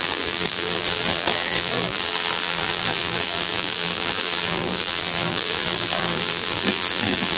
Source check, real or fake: fake